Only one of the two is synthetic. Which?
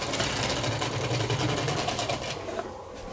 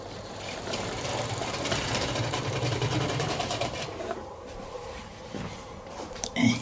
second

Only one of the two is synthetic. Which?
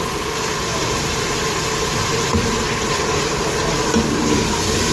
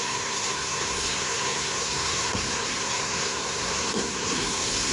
second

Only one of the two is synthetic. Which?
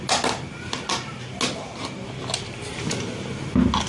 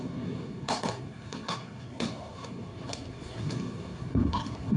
second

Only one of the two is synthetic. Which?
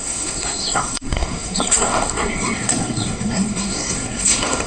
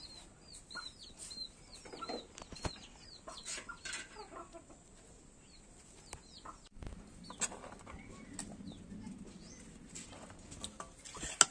first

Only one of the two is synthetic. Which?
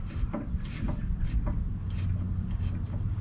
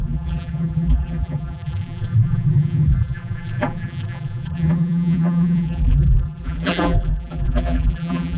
second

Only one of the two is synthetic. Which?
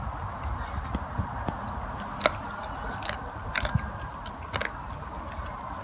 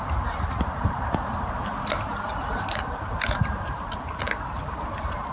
second